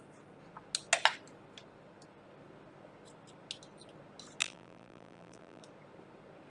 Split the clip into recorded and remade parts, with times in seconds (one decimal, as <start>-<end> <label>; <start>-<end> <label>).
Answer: 0.0-4.4 recorded; 4.4-5.6 remade; 5.6-6.5 recorded